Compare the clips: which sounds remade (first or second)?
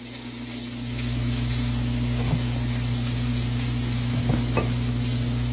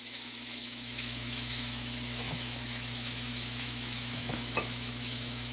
second